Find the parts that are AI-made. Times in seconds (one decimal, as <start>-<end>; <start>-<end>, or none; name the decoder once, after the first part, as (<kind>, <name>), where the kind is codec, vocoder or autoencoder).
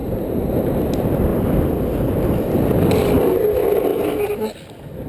0.0-0.9 (vocoder, BigVGAN v2)